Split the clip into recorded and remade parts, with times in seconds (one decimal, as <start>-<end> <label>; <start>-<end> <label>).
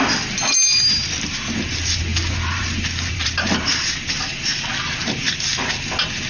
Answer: 0.0-2.1 recorded; 2.1-4.4 remade; 4.4-5.0 recorded; 5.0-5.7 remade; 5.7-6.3 recorded